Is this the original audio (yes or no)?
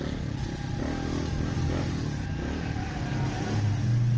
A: yes